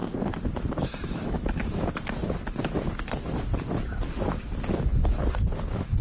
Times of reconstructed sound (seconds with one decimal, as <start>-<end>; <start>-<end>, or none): none